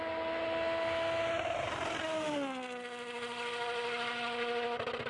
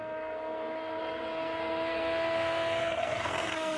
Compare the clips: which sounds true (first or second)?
first